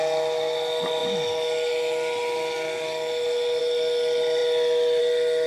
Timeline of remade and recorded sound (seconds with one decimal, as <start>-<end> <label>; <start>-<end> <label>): 0.0-5.5 recorded